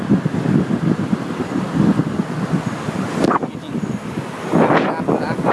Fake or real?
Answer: real